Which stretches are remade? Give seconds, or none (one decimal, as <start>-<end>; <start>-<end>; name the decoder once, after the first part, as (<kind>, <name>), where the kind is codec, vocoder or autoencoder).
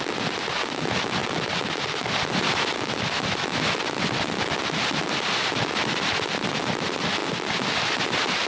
none